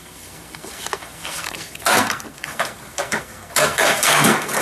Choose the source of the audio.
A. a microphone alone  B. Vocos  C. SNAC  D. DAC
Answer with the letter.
C